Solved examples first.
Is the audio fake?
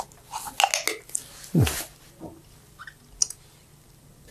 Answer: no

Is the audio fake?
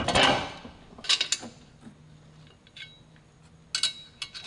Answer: no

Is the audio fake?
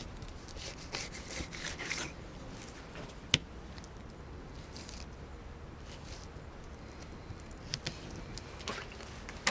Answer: no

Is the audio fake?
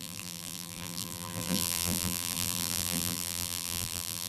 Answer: yes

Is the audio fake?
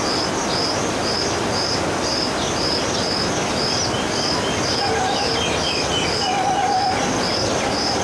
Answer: no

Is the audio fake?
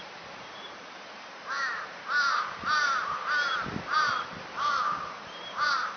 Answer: yes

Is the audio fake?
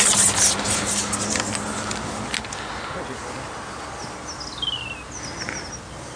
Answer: no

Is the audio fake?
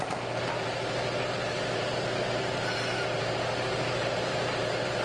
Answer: yes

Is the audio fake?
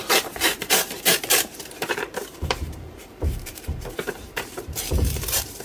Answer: yes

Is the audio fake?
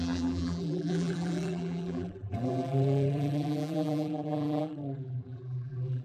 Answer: yes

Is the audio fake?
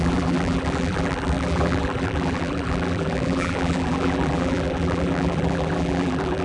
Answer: yes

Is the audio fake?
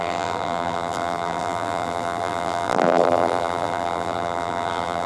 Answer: yes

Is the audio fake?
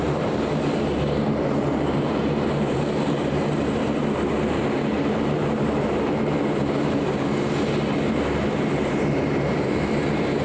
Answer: yes